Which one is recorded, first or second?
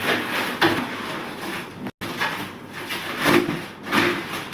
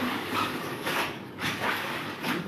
first